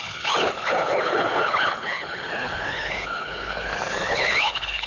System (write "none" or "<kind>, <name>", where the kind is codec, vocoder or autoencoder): codec, HILCodec